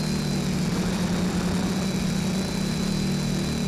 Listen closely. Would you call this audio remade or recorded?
recorded